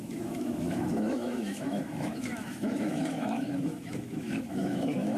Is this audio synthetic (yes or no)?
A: yes